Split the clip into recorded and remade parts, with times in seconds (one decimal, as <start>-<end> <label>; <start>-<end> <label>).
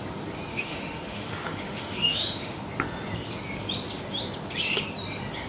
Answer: 0.0-0.5 recorded; 0.5-2.6 remade; 2.6-5.5 recorded